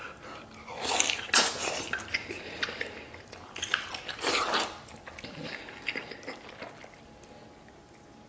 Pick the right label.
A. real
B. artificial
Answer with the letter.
A